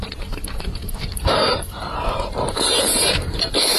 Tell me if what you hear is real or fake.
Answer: fake